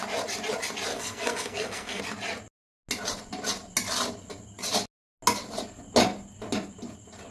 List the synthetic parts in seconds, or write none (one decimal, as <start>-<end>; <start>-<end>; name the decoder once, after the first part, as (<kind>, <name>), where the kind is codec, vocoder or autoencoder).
0.9-2.0 (codec, SNAC)